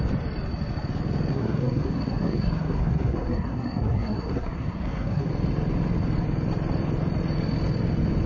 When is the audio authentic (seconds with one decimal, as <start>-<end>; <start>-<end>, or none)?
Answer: 0.0-1.3; 5.3-8.3